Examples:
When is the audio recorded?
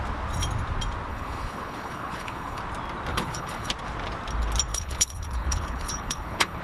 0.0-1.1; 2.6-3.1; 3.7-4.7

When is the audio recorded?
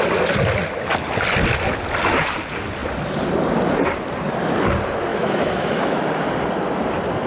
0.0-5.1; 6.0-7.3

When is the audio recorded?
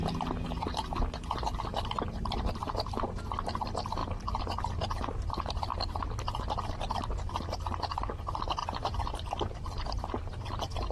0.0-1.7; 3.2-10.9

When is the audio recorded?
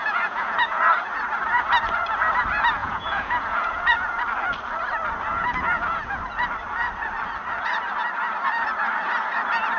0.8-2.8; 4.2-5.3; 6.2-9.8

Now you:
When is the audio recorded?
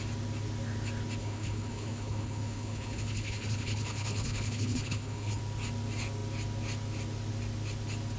0.0-1.2; 5.4-8.2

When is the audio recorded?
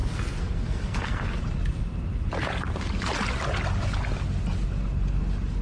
1.4-5.6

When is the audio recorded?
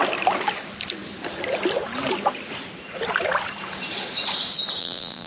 0.0-4.8